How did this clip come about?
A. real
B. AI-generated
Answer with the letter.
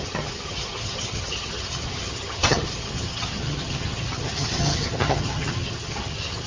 B